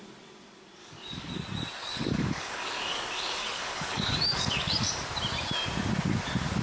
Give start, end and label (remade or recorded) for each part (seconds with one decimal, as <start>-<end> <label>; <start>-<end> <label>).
0.0-0.8 recorded; 0.8-1.3 remade; 1.3-1.8 recorded; 1.8-4.9 remade; 4.9-6.6 recorded